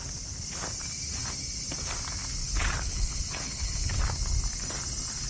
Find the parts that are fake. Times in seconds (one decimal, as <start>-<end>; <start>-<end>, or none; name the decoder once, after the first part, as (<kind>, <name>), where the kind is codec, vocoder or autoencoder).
2.4-4.0 (codec, HILCodec)